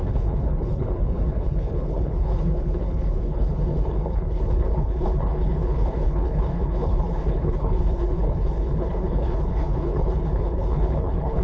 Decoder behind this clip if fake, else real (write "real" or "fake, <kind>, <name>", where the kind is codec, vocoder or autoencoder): fake, codec, HILCodec